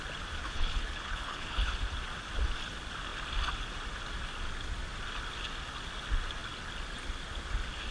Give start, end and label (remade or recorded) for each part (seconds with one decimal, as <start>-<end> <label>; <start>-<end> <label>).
0.0-0.4 recorded; 0.4-1.7 remade; 1.7-7.9 recorded